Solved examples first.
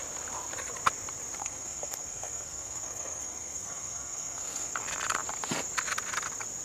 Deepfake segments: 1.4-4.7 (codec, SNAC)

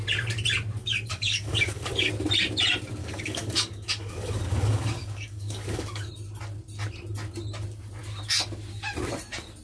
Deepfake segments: 0.8-2.1 (codec, DAC); 3.0-6.1

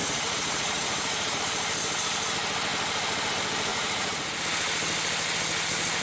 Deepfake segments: 0.0-1.4 (vocoder, Vocos); 3.7-4.4

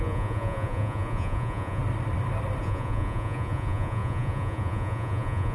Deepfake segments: 0.0-1.8 (vocoder, Vocos); 2.6-5.5